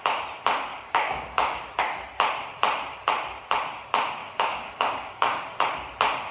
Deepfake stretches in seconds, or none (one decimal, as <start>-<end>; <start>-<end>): 0.7-1.6; 4.2-5.4